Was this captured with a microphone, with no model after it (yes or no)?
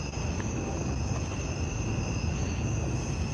yes